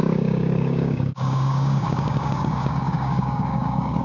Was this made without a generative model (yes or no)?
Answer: no